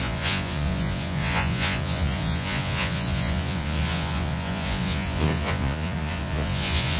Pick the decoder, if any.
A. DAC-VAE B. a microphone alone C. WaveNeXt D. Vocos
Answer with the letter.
D